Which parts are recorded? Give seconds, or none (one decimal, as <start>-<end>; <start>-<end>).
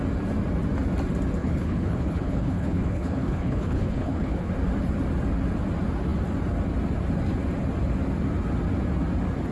0.0-1.4; 4.5-9.5